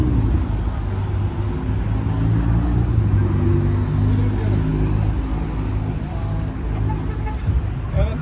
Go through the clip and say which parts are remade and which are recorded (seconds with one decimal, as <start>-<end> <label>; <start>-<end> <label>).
0.0-8.2 recorded